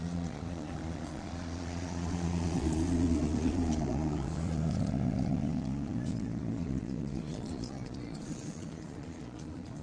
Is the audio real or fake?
fake